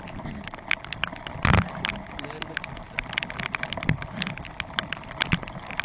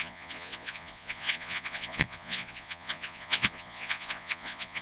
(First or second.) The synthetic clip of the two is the second